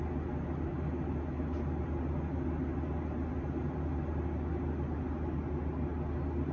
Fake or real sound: real